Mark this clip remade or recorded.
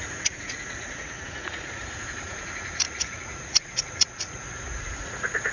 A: remade